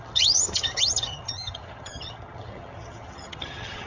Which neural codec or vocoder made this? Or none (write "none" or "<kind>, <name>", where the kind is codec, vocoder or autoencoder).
vocoder, HiFi-GAN